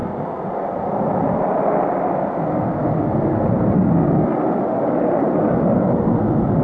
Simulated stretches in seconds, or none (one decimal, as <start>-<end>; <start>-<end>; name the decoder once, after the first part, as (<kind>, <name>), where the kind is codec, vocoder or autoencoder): none